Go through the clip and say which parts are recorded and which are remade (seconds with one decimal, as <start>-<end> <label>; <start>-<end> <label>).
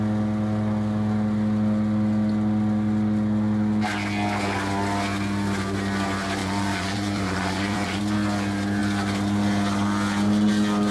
0.0-6.4 recorded; 6.4-8.0 remade; 8.0-10.9 recorded